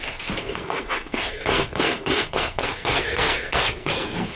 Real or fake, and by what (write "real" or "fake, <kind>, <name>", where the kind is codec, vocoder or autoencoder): fake, codec, SNAC